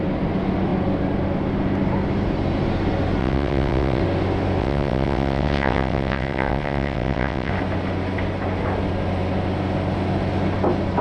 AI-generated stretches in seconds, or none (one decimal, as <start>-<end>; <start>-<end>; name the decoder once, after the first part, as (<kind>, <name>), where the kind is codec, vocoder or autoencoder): 3.2-4.0 (vocoder, WaveNeXt); 4.6-7.5